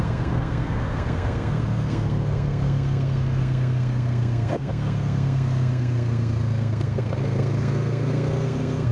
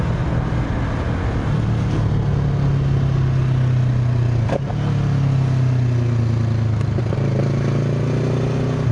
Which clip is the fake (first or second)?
first